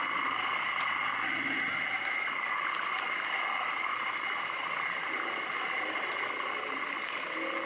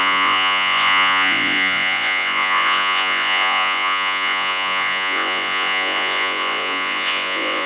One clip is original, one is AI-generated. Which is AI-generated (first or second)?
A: second